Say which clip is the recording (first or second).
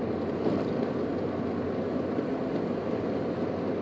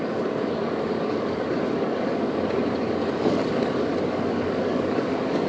first